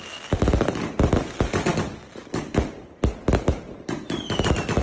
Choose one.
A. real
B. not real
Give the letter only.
A